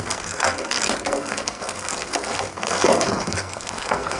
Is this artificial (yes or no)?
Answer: yes